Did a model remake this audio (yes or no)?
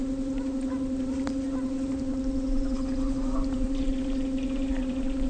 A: yes